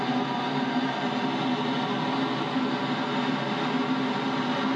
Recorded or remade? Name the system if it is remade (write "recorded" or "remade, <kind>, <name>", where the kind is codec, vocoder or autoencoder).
recorded